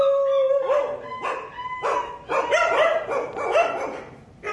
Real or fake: real